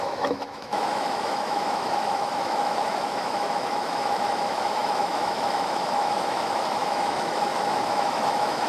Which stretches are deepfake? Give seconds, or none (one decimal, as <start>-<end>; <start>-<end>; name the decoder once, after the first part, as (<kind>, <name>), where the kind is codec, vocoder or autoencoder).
0.0-8.7 (autoencoder, DAC-VAE)